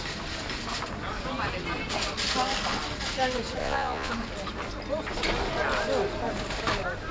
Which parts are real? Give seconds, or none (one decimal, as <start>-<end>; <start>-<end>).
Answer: 0.0-3.6; 4.1-7.1